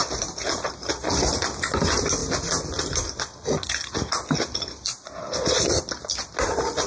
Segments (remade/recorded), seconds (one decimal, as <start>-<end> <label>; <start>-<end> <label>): 0.0-6.9 recorded